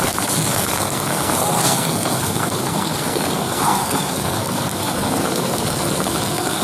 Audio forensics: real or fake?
fake